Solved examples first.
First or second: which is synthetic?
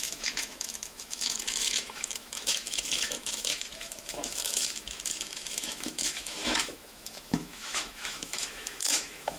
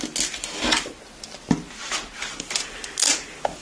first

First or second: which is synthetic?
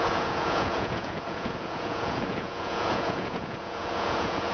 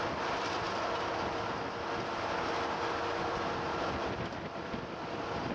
first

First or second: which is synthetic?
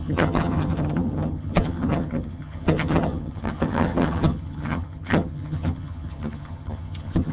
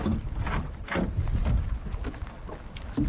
first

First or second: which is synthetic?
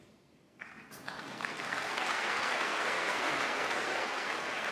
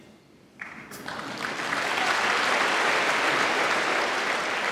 first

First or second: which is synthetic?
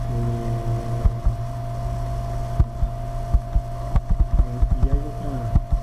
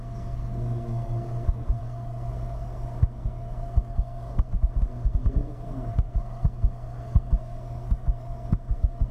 second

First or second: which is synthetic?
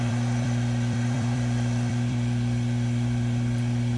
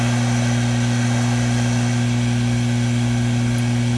first